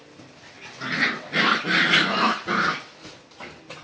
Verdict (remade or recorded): recorded